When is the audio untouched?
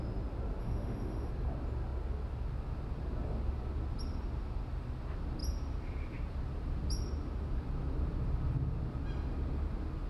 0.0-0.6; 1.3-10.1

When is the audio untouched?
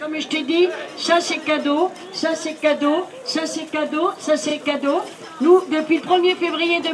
0.0-6.9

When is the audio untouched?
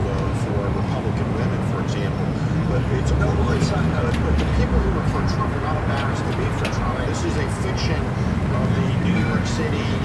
0.0-10.0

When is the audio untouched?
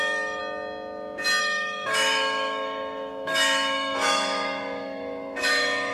0.4-1.4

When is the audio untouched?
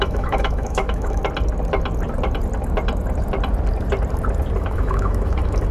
1.2-4.6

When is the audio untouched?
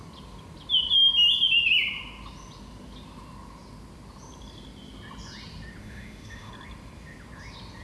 0.0-5.8; 6.5-7.8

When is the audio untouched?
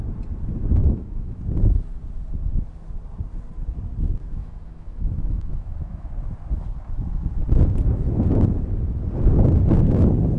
0.0-0.8; 1.4-4.4; 6.1-10.4